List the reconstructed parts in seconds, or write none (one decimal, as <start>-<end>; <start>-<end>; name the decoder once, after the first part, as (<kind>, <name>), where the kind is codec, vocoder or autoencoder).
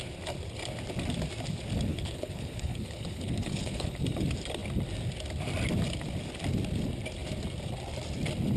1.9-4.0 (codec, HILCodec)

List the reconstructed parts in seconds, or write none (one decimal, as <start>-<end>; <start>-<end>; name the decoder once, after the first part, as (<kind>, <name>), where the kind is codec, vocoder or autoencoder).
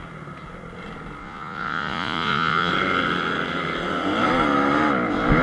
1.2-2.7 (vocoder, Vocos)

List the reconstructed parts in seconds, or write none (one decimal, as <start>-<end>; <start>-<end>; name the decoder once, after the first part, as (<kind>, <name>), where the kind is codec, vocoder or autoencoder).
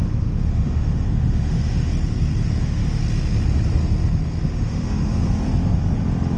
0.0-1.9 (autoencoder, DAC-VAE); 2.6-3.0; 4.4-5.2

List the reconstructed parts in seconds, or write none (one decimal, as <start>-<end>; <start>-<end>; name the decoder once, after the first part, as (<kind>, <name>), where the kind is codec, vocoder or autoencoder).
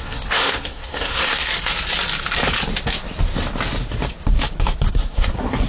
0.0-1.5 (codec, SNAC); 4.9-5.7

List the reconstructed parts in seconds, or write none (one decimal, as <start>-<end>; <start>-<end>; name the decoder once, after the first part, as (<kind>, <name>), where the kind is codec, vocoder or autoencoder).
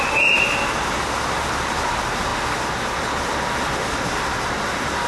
none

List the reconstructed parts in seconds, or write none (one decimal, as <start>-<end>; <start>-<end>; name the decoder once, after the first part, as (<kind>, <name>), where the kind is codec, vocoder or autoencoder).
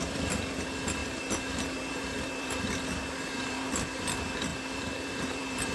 0.0-5.7 (vocoder, BigVGAN v2)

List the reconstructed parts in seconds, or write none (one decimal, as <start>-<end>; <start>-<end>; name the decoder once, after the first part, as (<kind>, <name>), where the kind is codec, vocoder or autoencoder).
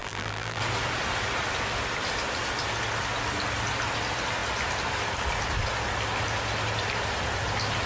0.0-0.6 (vocoder, BigVGAN v2)